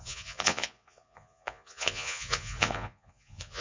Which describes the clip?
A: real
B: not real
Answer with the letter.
B